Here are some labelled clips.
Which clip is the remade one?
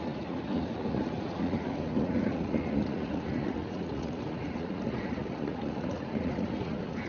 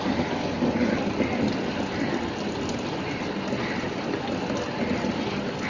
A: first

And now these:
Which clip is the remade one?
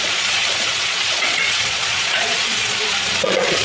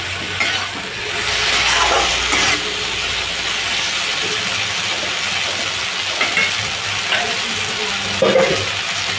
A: first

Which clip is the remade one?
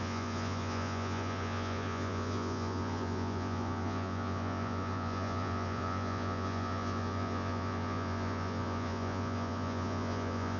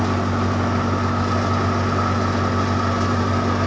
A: first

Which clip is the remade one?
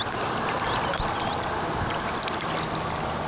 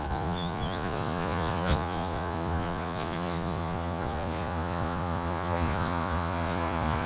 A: second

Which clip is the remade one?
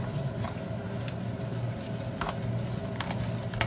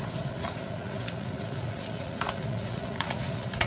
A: second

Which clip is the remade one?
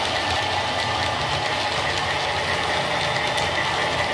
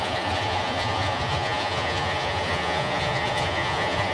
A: second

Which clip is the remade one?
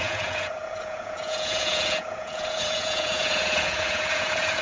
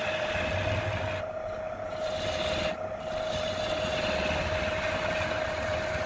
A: first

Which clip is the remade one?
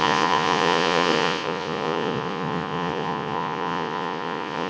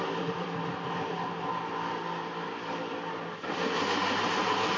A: first